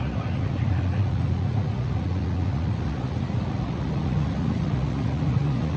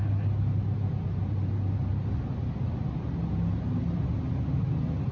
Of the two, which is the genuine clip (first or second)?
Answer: second